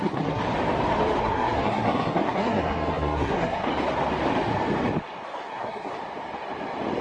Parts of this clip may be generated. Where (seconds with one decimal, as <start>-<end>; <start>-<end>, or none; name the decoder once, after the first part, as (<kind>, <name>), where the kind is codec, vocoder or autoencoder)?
0.0-0.4 (codec, SNAC); 1.2-3.7; 5.5-5.9